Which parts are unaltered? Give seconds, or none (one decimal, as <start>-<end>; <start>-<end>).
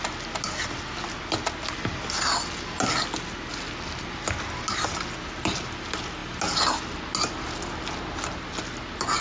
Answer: 0.0-9.2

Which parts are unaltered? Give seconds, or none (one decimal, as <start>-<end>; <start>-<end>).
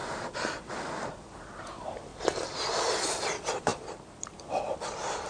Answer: 0.0-3.7; 4.4-5.3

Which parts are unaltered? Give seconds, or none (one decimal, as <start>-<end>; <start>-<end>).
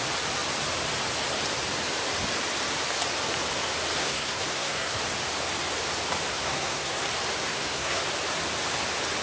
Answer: 0.0-4.0; 5.0-6.3; 7.0-7.4; 8.0-9.2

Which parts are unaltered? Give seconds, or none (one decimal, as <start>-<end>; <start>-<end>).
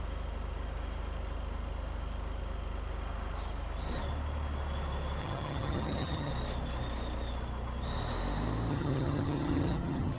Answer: 0.0-5.2; 6.3-8.7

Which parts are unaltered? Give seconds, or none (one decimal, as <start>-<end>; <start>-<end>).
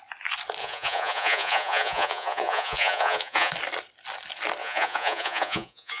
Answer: 0.0-0.6; 3.5-4.6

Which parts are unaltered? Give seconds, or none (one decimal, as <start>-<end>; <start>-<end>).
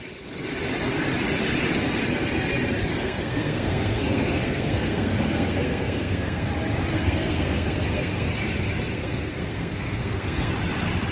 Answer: 0.0-2.9; 6.5-6.9; 8.3-8.9; 10.5-11.1